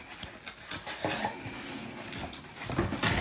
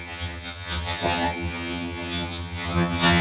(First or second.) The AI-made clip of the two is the second